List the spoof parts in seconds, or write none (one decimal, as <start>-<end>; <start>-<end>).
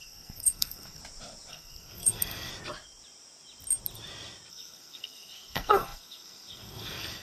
0.0-1.0; 1.5-2.5; 4.5-7.2